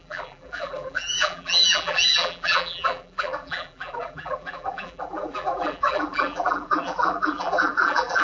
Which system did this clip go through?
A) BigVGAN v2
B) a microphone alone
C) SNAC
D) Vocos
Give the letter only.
A